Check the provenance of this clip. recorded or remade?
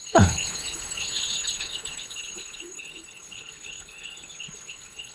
remade